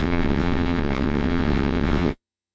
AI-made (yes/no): yes